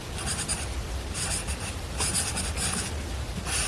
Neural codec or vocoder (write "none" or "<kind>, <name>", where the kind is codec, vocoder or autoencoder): vocoder, BigVGAN v2